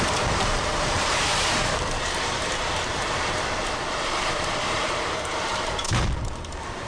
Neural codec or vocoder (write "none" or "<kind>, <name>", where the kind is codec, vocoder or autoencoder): vocoder, BigVGAN v2